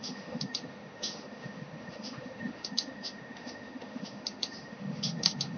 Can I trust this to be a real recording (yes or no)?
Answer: no